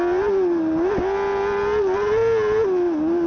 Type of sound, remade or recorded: recorded